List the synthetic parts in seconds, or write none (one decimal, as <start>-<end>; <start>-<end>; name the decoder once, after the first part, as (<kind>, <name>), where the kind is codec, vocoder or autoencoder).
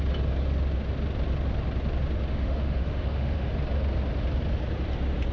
2.3-3.5 (autoencoder, DAC-VAE)